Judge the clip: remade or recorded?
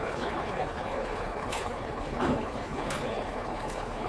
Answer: remade